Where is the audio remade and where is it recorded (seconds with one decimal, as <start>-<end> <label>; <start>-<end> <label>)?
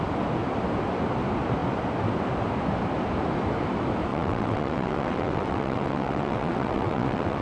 0.0-4.1 recorded; 4.1-7.4 remade